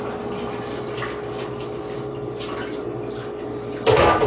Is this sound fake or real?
real